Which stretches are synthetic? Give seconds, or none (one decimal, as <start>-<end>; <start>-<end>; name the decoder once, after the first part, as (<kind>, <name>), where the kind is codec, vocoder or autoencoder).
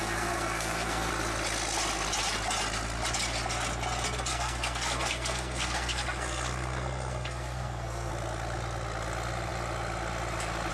0.0-1.1 (codec, SNAC); 4.3-8.1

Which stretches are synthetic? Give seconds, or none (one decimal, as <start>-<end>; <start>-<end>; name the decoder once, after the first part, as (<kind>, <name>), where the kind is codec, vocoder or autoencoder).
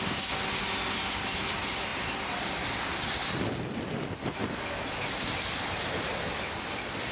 none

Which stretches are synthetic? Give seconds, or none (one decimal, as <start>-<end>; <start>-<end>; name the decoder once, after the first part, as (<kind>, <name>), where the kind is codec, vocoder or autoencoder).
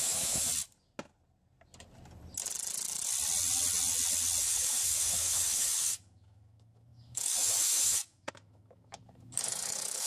0.0-0.5 (autoencoder, DAC-VAE); 4.4-10.1